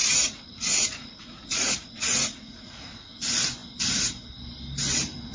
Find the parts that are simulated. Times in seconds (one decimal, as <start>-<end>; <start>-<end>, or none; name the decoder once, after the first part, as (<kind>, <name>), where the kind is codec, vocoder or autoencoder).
0.0-3.2 (vocoder, Vocos)

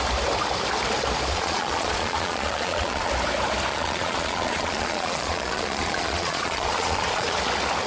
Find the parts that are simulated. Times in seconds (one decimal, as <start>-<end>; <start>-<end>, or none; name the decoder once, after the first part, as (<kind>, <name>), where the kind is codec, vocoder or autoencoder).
1.3-3.1 (vocoder, Vocos); 3.7-7.4

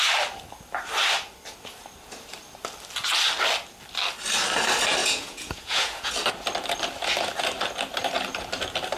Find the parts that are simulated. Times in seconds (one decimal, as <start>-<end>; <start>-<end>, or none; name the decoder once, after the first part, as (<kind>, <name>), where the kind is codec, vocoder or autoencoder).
5.0-6.1 (vocoder, Vocos)

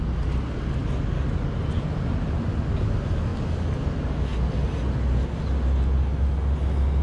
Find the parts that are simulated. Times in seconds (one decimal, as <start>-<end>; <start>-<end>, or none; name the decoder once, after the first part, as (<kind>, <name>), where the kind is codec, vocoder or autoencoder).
none

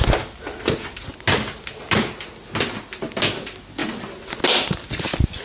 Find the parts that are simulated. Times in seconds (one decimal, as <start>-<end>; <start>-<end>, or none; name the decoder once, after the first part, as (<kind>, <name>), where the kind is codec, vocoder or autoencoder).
none

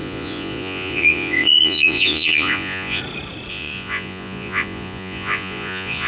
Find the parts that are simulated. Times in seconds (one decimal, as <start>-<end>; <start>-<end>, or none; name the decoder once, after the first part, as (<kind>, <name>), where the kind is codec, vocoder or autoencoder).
0.0-3.0 (vocoder, Vocos); 3.5-6.1